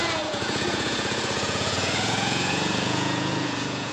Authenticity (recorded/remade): remade